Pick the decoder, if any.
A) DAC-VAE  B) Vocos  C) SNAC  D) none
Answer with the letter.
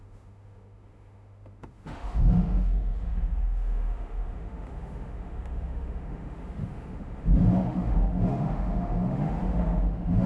A